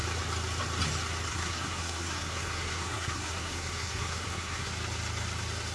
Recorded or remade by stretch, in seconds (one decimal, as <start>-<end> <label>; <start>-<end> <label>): 0.0-1.3 recorded; 1.3-4.7 remade; 4.7-5.7 recorded